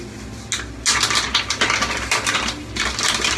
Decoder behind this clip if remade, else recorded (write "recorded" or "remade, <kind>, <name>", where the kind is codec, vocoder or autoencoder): recorded